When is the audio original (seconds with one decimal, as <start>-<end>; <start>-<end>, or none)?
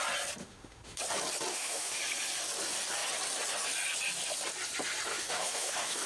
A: 0.0-0.4; 1.0-1.5; 2.0-5.1